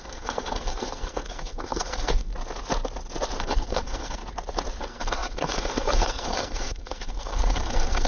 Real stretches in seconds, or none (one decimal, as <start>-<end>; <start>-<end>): 2.3-3.4; 4.2-4.8